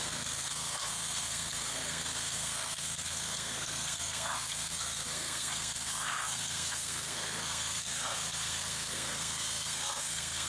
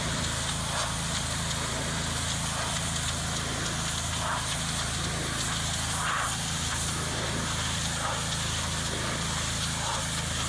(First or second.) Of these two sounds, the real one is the second